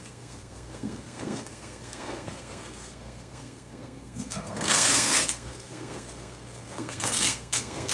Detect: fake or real fake